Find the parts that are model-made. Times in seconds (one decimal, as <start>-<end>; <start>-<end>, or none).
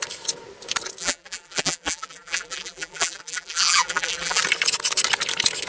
1.0-4.4